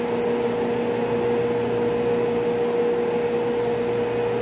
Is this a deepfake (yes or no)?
no